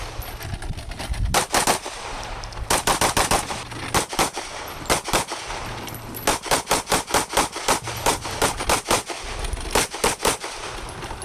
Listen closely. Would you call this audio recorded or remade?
recorded